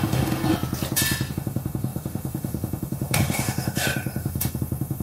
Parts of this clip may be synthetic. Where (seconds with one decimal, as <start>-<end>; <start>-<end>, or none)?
0.0-0.4; 1.3-5.0